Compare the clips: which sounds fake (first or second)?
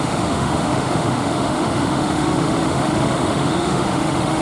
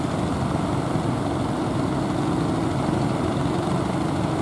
first